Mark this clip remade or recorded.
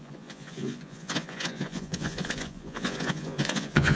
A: remade